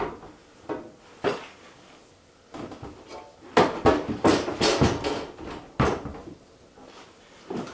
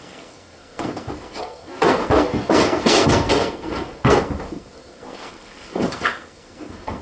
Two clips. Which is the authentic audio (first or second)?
first